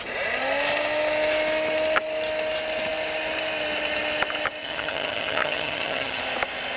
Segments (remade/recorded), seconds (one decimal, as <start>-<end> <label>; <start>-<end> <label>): 0.0-4.6 recorded; 4.6-6.2 remade; 6.2-6.8 recorded